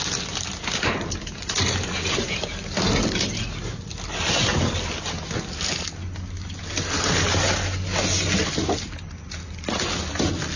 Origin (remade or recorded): recorded